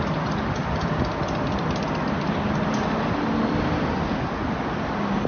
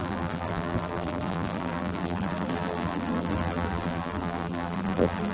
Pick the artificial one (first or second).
second